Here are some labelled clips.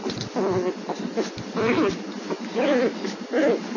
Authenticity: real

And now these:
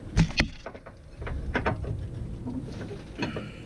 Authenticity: real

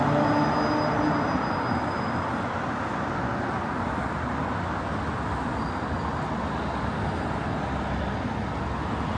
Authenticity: real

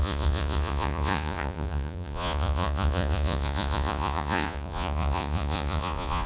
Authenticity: fake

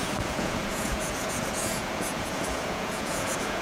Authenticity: fake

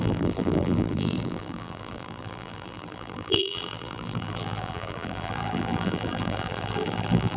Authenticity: fake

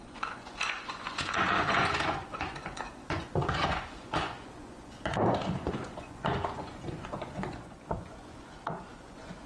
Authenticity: fake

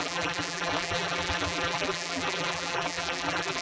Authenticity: fake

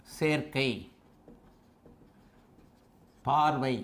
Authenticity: real